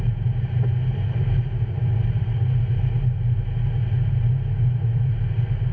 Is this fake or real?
real